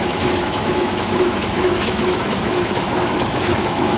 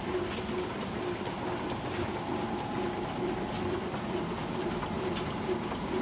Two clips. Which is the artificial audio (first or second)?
first